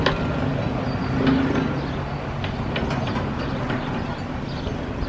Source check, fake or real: real